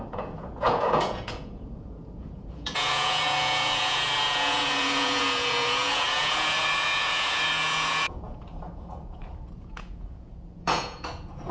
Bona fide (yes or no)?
no